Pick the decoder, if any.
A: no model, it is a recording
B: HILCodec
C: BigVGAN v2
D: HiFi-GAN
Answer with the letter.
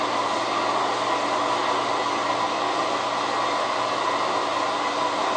A